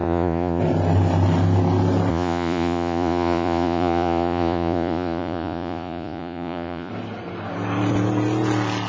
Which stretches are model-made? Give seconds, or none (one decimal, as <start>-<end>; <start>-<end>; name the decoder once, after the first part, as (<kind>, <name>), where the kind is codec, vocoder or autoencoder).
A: 0.0-0.6 (vocoder, Vocos); 2.1-6.9